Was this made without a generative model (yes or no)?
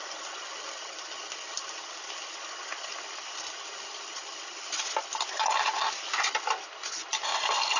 yes